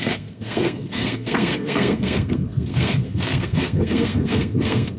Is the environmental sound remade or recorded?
remade